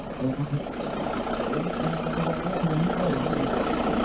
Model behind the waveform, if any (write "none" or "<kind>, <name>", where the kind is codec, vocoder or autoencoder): none